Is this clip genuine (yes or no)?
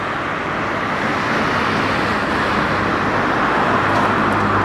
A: yes